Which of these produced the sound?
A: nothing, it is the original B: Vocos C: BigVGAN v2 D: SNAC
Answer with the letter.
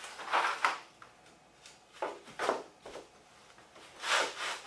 A